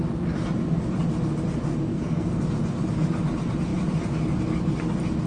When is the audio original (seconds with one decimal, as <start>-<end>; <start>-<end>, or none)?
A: 0.0-1.9; 2.4-5.3